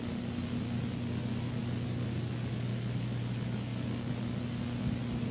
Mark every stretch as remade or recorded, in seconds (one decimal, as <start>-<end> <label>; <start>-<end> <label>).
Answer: 0.0-5.3 recorded